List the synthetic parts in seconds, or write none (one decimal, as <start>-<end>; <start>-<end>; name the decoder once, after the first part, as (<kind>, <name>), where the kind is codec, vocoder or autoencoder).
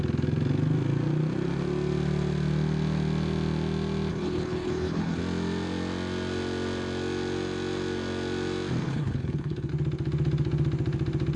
4.1-5.2 (codec, HILCodec); 8.8-9.7